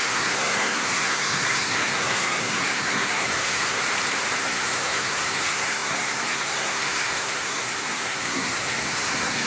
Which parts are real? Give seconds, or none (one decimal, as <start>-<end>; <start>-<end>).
3.8-4.4